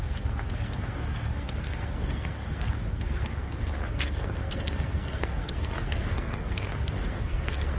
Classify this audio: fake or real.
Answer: fake